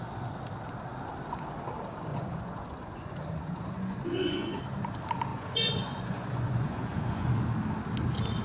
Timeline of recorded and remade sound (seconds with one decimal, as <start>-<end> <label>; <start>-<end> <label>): 0.0-2.1 recorded; 2.1-4.6 remade; 4.6-5.3 recorded; 5.3-7.3 remade; 7.3-8.4 recorded